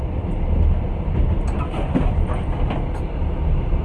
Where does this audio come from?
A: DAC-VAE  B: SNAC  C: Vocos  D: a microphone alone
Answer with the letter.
D